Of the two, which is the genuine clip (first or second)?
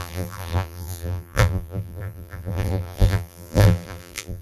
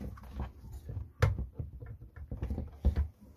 second